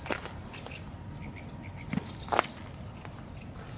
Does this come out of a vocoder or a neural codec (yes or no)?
no